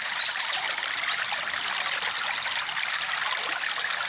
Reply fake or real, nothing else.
real